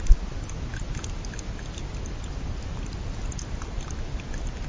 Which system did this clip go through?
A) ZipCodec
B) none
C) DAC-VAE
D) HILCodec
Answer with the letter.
B